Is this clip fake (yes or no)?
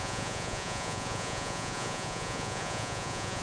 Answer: yes